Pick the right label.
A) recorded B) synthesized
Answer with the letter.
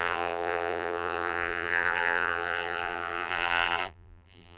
B